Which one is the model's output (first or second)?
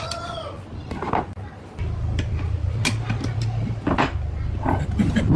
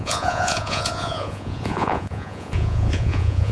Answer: second